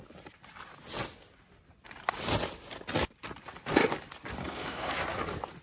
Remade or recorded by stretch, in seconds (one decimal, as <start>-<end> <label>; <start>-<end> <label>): 0.0-4.4 recorded; 4.4-4.9 remade; 4.9-5.6 recorded